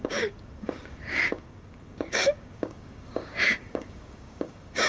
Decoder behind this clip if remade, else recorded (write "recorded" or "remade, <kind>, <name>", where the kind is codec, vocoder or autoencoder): remade, codec, DAC